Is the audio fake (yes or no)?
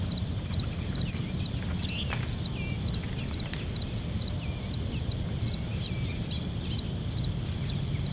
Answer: no